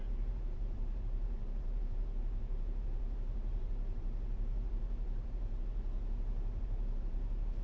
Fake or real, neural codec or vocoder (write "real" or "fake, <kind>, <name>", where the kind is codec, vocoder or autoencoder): fake, vocoder, BigVGAN v2